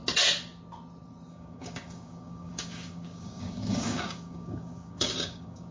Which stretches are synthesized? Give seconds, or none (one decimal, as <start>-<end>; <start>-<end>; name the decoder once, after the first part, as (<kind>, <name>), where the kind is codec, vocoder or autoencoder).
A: 1.3-5.7 (codec, DAC)